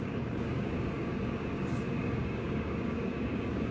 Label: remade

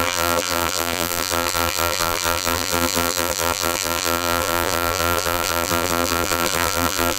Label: remade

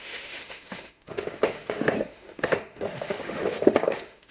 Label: remade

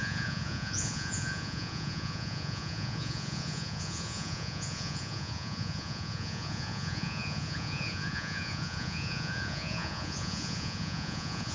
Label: remade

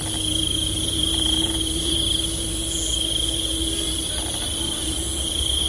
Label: recorded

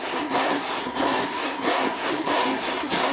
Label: remade